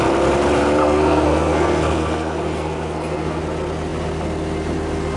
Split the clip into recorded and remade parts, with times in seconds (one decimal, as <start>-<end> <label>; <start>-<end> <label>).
0.0-0.8 recorded; 0.8-3.4 remade; 3.4-5.2 recorded